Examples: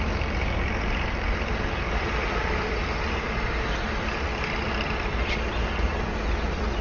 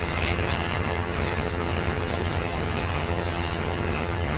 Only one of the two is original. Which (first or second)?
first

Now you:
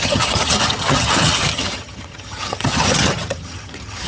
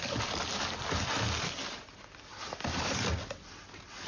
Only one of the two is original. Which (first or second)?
second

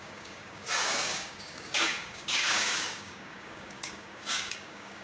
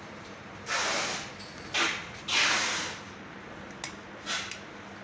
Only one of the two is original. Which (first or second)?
second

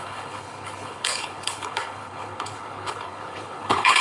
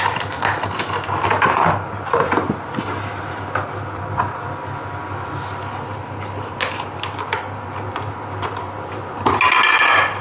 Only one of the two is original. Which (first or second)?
second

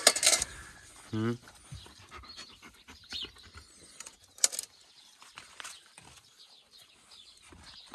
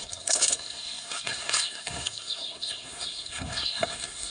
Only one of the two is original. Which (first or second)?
first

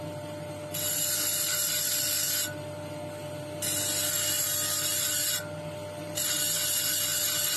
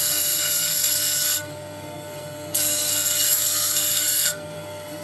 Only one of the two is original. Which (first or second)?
first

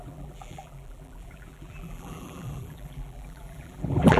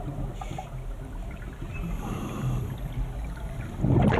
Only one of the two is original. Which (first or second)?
second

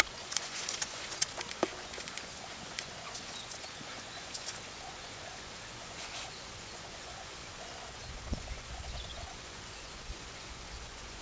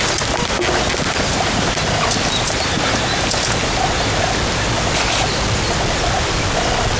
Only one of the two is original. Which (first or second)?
second